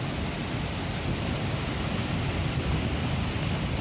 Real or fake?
real